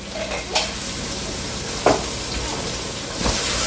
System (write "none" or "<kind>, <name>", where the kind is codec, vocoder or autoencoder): none